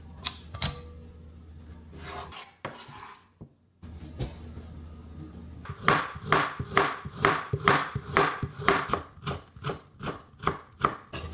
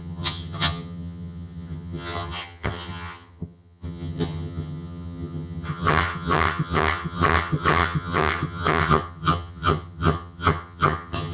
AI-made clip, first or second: second